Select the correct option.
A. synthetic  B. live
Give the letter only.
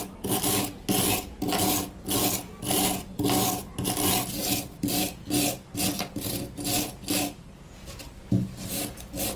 B